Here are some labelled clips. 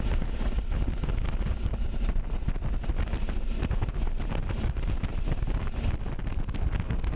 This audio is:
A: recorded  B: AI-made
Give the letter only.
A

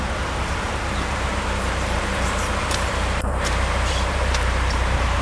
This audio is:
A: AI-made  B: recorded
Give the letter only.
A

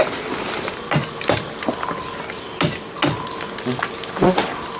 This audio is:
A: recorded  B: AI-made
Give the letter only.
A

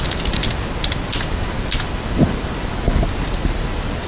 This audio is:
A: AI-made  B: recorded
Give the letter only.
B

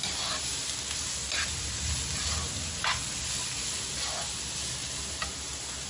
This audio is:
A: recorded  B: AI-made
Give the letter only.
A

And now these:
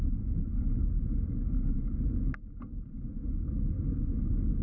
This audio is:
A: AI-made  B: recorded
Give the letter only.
B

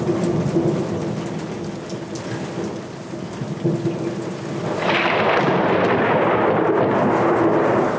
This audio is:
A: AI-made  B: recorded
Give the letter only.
B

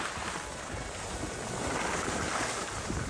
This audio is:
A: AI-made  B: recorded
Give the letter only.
B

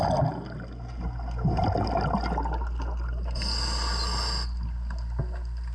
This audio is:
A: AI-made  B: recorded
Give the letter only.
B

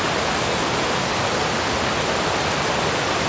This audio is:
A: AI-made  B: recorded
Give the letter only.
B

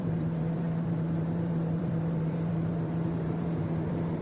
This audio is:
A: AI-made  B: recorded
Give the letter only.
A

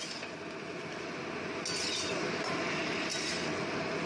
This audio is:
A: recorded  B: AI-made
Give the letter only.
A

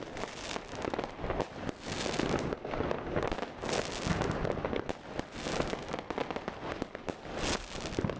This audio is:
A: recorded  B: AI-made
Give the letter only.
A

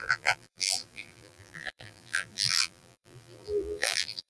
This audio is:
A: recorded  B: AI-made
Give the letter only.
B